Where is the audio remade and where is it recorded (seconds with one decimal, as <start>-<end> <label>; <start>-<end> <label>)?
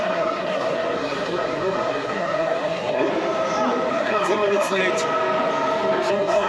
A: 0.0-3.1 remade; 3.1-3.9 recorded; 3.9-4.8 remade; 4.8-6.1 recorded; 6.1-6.5 remade